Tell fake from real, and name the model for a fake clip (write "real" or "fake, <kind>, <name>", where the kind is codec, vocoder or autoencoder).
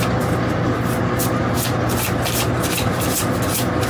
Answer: real